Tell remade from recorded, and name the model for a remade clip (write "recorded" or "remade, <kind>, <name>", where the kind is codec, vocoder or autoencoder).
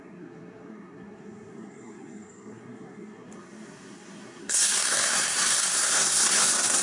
remade, codec, SNAC